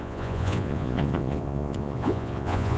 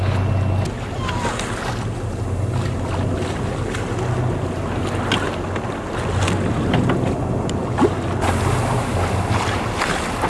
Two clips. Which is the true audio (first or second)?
second